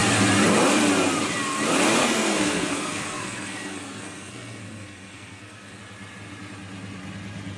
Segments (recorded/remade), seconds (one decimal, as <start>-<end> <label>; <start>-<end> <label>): 0.0-2.0 recorded; 2.0-5.8 remade; 5.8-7.6 recorded